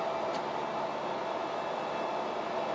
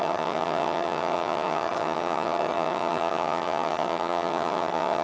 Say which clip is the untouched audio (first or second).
first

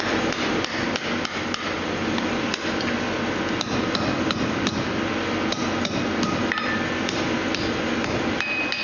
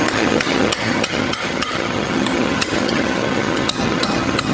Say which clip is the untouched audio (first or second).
first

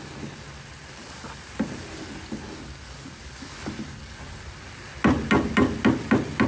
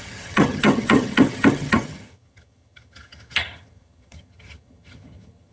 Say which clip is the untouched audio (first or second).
first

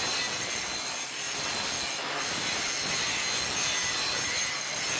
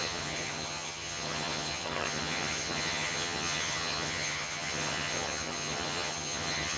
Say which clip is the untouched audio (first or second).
first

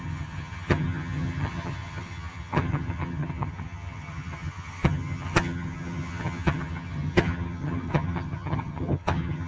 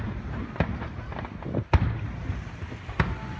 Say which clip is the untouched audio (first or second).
second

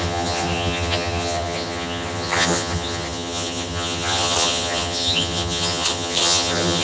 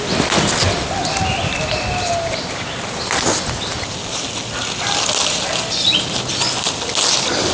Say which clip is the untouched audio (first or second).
second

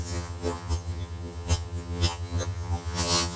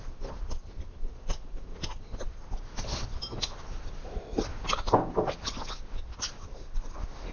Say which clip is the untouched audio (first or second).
second